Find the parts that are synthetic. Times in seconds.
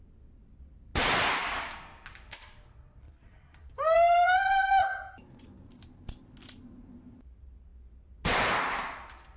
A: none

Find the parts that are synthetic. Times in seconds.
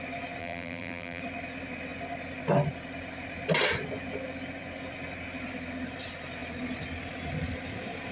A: 0.4-1.2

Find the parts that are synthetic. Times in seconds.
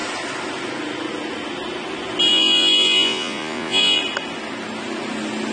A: 2.3-4.0